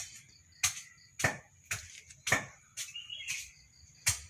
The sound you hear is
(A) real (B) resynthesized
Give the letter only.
A